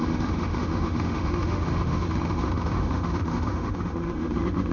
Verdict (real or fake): fake